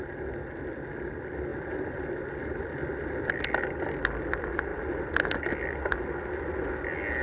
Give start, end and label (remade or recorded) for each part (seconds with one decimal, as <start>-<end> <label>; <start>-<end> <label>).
0.0-7.2 recorded